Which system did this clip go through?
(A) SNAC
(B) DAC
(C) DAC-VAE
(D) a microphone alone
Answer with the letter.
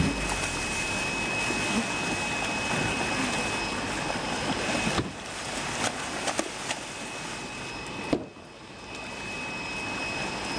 D